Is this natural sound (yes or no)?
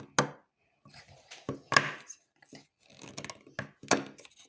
yes